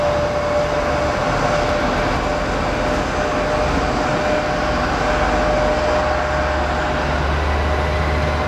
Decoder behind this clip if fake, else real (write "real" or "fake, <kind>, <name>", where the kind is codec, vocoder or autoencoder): real